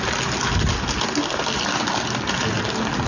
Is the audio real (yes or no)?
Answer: yes